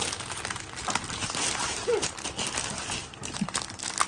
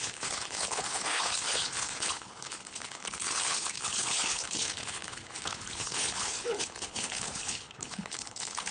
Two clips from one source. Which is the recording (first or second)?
first